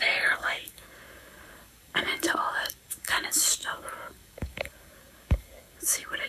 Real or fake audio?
fake